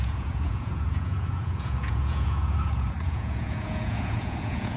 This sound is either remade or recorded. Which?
remade